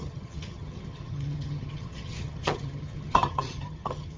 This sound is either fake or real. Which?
fake